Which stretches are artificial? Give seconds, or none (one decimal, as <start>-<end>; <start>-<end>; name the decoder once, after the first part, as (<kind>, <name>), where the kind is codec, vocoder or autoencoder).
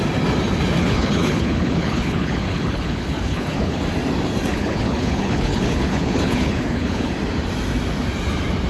0.8-3.8 (codec, HILCodec); 4.5-7.1